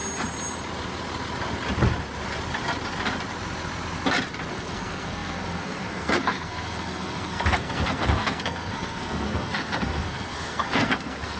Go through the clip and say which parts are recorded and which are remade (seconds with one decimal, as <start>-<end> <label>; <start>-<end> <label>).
0.0-4.5 recorded; 4.5-11.4 remade